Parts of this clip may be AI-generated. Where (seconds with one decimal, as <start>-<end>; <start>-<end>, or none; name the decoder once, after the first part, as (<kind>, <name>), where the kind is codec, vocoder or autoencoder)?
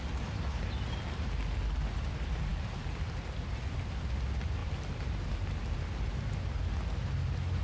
2.5-4.0 (vocoder, BigVGAN v2); 4.6-5.2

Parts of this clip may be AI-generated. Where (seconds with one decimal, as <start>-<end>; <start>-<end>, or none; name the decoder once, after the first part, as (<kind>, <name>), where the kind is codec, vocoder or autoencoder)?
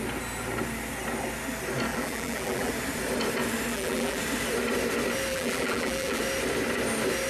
1.9-2.7 (vocoder, BigVGAN v2); 3.7-4.2; 5.3-6.2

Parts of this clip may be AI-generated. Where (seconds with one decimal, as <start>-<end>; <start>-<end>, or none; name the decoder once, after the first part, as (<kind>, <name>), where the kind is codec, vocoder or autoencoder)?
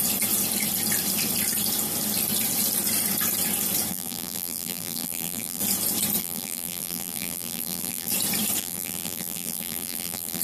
3.9-5.6 (vocoder, BigVGAN v2); 6.2-8.1; 8.6-10.4